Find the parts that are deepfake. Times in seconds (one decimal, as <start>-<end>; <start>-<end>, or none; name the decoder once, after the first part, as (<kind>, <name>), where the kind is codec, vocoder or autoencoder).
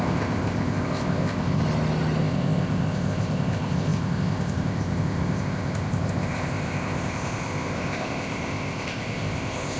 0.0-1.6 (codec, ZipCodec); 2.2-9.8